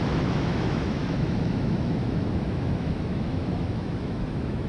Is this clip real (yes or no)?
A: no